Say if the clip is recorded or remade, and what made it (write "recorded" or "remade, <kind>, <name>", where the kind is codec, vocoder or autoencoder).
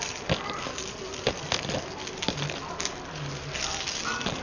recorded